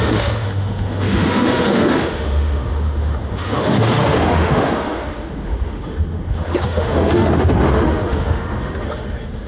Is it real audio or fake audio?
fake